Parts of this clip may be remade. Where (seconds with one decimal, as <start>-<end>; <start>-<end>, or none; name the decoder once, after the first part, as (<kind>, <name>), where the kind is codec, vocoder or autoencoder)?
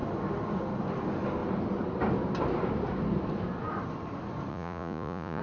4.5-5.4 (vocoder, Vocos)